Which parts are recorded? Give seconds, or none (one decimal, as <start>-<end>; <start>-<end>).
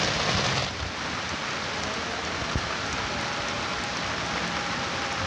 0.0-5.3